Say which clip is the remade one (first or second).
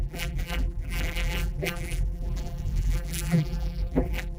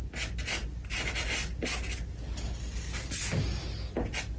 first